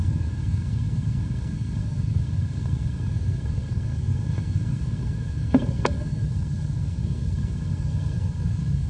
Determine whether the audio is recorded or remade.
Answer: remade